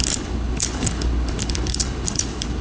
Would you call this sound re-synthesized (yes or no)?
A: yes